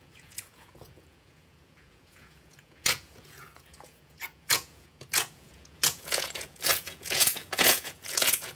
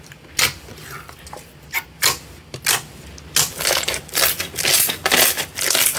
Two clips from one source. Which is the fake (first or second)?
first